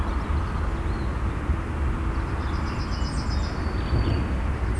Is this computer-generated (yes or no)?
no